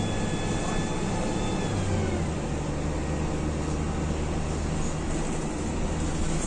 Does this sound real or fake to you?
real